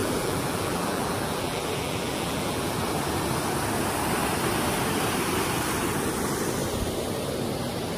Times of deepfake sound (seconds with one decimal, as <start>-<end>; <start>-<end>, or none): 0.0-2.7